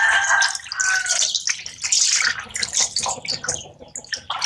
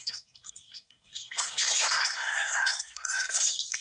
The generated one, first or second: second